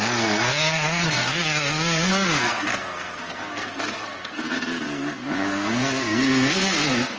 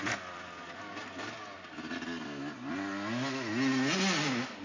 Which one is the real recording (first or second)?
second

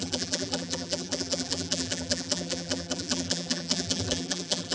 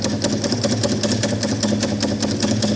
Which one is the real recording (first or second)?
second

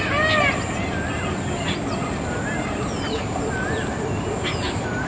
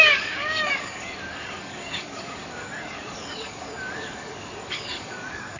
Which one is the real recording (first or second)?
first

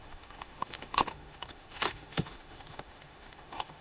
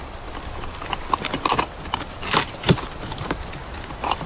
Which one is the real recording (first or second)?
second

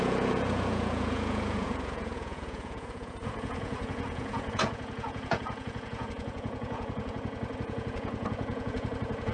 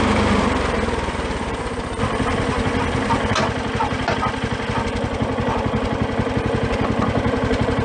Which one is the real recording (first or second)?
second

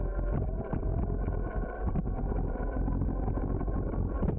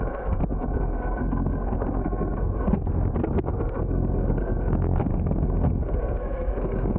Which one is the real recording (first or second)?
first